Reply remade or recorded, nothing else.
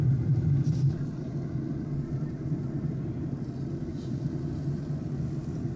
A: recorded